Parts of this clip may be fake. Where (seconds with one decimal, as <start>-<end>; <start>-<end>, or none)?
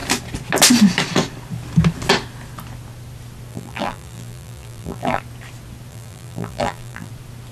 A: 3.5-5.2; 5.9-7.1